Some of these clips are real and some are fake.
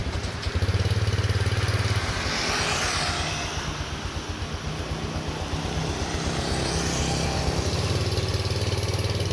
real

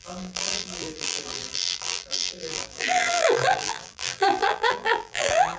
fake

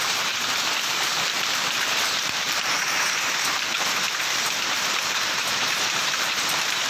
fake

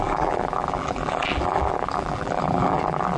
fake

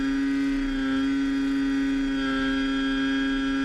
real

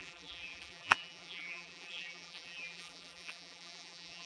fake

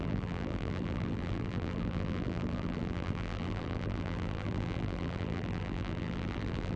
fake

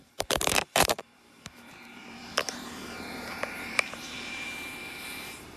fake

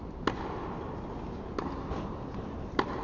real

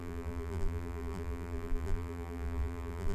fake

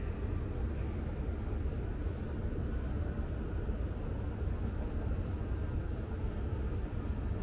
real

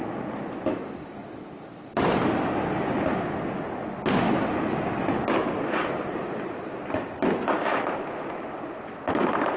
real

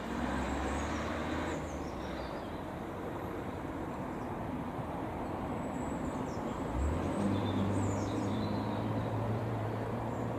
fake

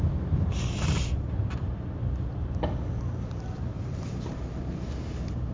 fake